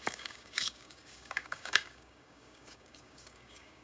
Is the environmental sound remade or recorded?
remade